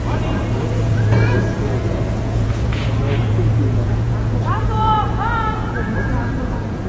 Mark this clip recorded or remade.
remade